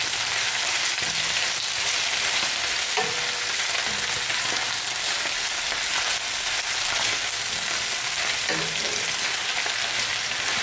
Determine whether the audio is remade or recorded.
recorded